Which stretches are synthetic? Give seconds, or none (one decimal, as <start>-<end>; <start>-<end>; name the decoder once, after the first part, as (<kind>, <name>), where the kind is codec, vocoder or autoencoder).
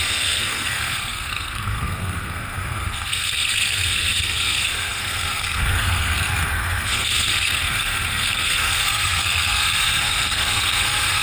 0.0-11.2 (codec, SNAC)